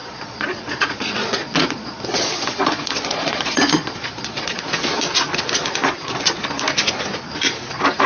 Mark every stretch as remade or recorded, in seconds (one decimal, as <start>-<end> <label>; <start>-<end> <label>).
0.0-4.6 remade; 4.6-5.8 recorded; 5.8-6.4 remade; 6.4-8.1 recorded